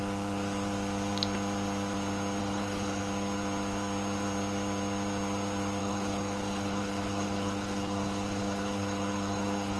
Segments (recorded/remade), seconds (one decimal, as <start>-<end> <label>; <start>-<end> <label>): 0.0-2.4 recorded; 2.4-3.0 remade; 3.0-5.8 recorded; 5.8-9.8 remade